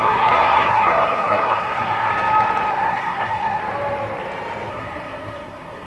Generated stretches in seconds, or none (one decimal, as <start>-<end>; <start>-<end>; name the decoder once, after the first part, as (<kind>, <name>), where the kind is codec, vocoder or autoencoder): 0.0-2.1 (codec, SNAC); 2.7-3.6; 4.7-5.9

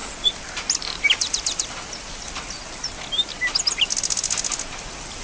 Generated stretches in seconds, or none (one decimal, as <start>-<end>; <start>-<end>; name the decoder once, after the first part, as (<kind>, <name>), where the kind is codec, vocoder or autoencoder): none

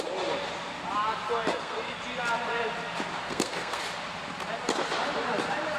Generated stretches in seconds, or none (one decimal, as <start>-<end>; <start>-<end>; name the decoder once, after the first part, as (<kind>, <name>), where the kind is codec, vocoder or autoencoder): 1.5-2.0 (codec, SNAC); 3.2-3.8

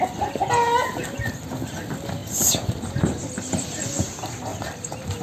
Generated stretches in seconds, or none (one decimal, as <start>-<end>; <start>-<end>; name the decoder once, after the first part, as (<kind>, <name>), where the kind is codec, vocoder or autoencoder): none